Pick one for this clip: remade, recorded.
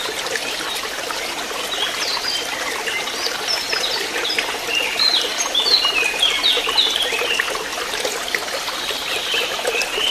recorded